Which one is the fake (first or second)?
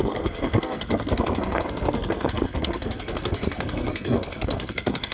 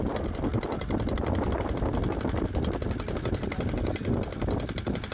first